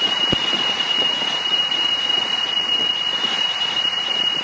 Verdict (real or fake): fake